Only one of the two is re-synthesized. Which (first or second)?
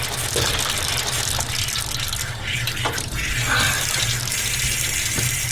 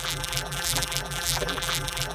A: second